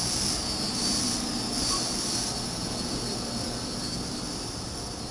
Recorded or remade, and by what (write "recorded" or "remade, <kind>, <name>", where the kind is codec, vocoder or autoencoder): recorded